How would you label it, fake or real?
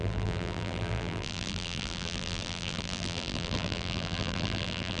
fake